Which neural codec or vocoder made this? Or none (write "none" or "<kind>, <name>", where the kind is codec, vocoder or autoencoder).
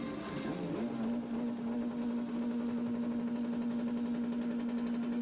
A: none